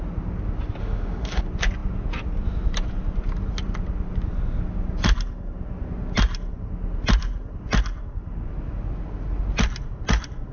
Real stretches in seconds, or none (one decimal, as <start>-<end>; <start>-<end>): 0.0-0.8; 1.4-10.5